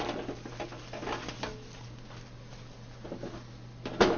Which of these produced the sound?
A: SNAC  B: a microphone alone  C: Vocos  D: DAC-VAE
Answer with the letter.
B